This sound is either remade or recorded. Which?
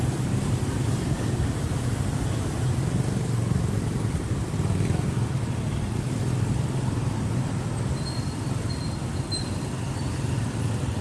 recorded